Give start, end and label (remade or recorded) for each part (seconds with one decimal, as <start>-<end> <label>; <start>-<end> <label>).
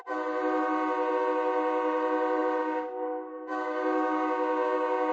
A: 0.0-2.6 recorded; 2.6-5.1 remade